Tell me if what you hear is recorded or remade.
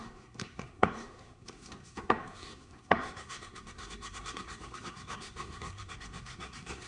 remade